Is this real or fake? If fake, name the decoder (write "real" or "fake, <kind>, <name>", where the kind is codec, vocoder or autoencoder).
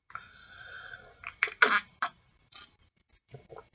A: real